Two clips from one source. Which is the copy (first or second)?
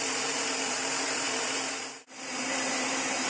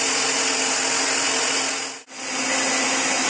first